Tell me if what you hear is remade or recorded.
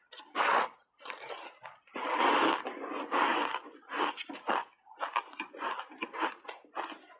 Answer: recorded